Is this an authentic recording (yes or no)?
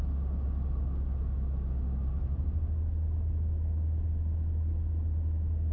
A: yes